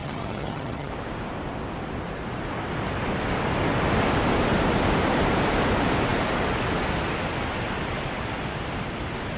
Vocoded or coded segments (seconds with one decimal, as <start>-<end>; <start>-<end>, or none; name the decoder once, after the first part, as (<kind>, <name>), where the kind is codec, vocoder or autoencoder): 0.0-0.9 (vocoder, HiFi-GAN)